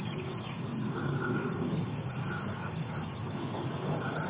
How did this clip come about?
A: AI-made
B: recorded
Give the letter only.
A